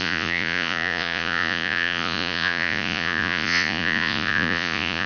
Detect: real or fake fake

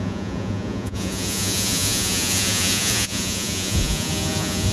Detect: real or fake fake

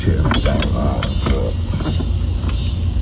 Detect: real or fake real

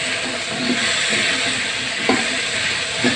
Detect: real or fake real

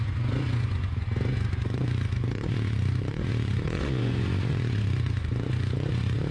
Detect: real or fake fake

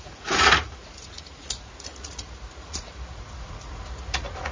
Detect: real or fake fake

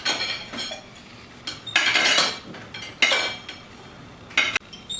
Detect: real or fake real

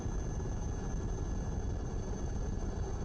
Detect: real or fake real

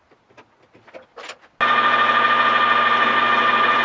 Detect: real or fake real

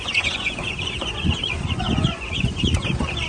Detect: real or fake fake